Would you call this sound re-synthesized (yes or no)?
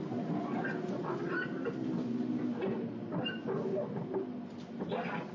no